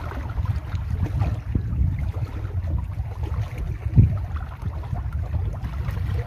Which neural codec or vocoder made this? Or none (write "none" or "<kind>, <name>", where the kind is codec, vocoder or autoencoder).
none